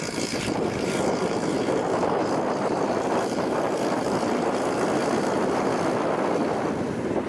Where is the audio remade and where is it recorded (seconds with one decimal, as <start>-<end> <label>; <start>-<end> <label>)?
0.0-5.7 remade; 5.7-6.8 recorded; 6.8-7.3 remade